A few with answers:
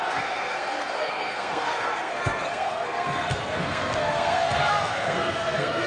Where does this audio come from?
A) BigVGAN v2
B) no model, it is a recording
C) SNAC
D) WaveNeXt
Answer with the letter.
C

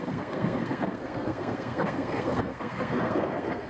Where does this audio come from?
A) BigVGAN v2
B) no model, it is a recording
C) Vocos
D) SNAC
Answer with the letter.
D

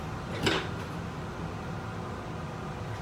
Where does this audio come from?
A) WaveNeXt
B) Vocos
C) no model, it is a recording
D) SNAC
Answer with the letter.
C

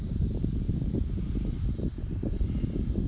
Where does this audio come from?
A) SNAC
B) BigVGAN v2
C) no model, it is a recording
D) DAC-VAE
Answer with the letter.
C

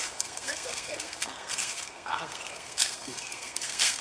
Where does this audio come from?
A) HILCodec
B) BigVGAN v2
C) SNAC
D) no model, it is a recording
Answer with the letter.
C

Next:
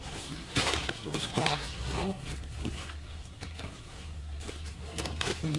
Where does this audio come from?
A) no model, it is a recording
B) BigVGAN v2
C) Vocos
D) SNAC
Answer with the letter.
D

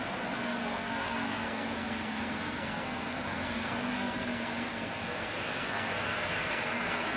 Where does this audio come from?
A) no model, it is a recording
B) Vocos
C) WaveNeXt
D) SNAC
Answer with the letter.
D